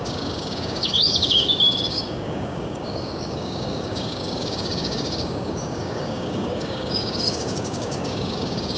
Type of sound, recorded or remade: remade